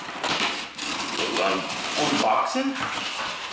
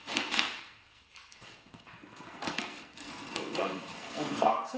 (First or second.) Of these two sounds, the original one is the first